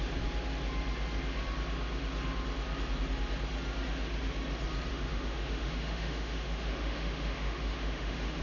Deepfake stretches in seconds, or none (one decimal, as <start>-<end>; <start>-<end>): 4.9-8.4